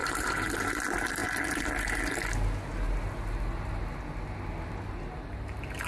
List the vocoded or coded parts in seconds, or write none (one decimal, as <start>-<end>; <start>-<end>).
0.0-0.7